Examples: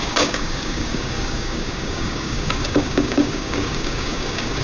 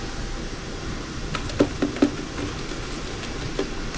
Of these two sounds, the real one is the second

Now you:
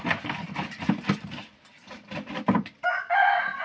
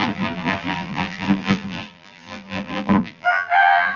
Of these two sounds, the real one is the first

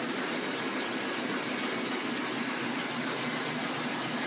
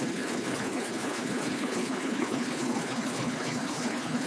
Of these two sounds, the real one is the first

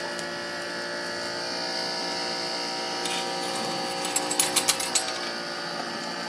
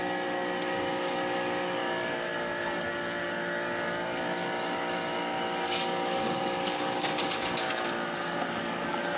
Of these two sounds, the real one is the first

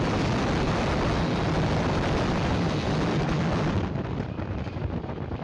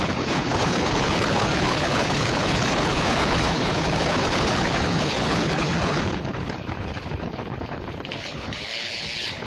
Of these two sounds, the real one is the first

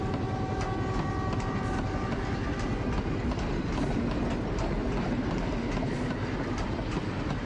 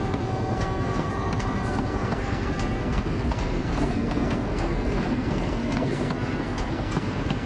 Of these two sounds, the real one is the first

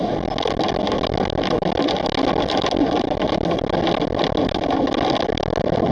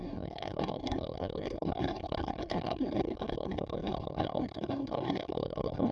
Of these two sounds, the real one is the first